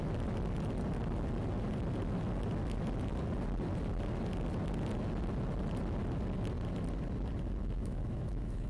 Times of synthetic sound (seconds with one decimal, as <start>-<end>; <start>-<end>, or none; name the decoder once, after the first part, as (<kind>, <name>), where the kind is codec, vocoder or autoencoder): 7.6-8.7 (autoencoder, DAC-VAE)